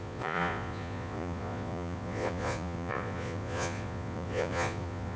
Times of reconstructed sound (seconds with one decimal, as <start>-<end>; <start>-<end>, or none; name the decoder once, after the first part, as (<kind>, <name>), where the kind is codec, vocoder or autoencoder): 0.0-5.2 (vocoder, Vocos)